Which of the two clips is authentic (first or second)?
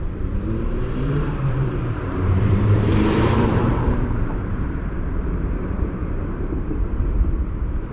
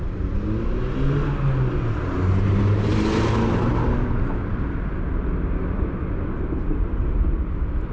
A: second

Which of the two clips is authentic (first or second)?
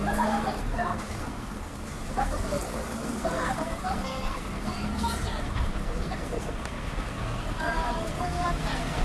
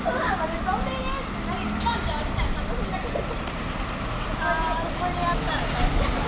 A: second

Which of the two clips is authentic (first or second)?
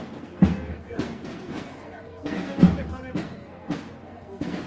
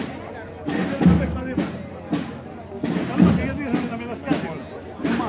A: second